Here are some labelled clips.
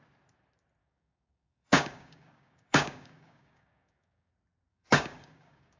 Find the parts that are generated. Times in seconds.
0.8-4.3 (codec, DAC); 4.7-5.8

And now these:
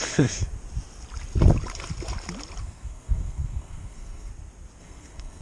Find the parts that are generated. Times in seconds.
0.0-0.5 (codec, SNAC); 2.6-4.3; 4.8-5.4

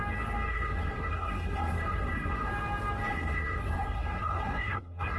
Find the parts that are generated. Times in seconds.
0.5-2.5 (codec, SNAC); 3.1-5.2

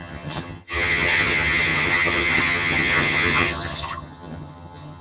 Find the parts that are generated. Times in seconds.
0.0-5.0 (vocoder, HiFi-GAN)

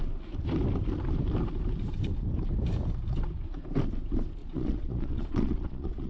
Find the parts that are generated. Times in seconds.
4.4-6.1 (vocoder, Vocos)

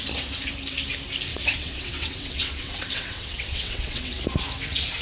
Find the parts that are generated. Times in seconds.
1.3-4.1 (vocoder, WaveNeXt)

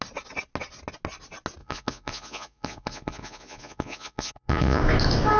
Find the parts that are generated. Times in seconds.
1.6-4.8 (vocoder, Vocos)

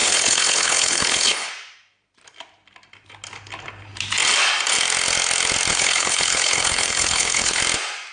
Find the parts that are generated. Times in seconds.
0.0-1.5 (codec, HILCodec); 5.7-7.6